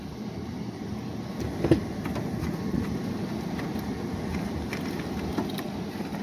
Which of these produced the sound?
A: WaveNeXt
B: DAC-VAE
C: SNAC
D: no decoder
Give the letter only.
D